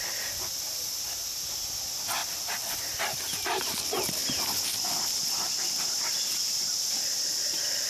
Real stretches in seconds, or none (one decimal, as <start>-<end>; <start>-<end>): 0.0-7.9